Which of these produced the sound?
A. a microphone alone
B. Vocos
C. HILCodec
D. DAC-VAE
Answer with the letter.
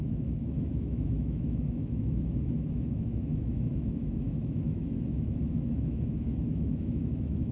D